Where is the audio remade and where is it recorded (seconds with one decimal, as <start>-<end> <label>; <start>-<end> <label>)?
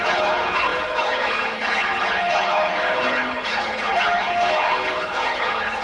0.0-5.8 remade